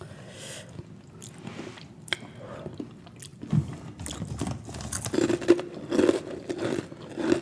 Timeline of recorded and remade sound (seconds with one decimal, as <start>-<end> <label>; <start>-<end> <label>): 0.0-7.4 recorded